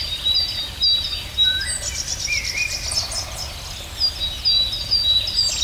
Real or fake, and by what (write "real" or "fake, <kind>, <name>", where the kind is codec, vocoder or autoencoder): real